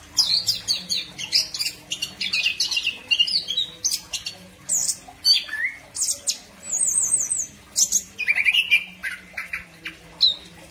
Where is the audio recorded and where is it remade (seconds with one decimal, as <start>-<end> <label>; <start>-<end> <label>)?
0.0-10.7 recorded